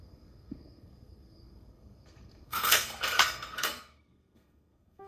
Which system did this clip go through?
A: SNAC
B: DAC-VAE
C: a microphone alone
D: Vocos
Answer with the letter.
A